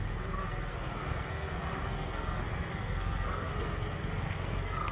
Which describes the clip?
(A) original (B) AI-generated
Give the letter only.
B